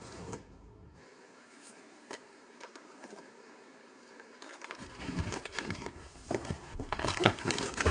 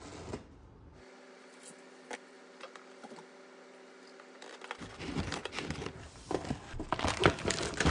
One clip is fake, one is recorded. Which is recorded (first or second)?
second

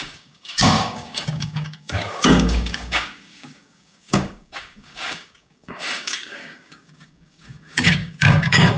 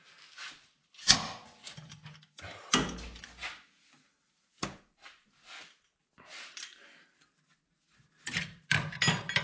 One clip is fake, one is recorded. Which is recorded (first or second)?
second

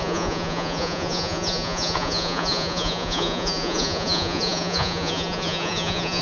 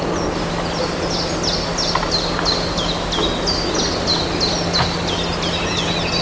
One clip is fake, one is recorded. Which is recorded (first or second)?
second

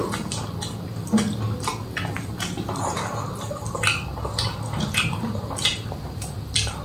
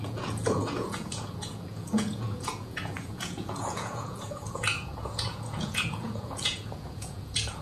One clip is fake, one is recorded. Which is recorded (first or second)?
first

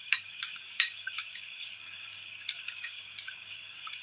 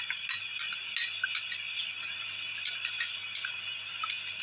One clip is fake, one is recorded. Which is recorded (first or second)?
second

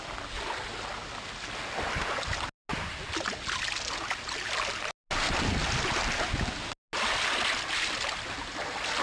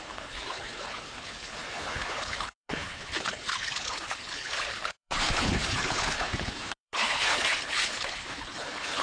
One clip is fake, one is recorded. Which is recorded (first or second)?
first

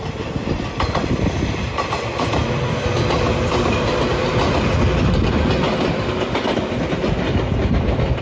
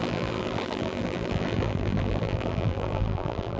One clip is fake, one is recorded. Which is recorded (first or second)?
first